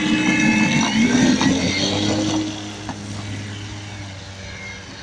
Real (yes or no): yes